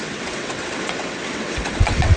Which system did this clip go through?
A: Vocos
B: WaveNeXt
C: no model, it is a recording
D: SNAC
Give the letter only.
B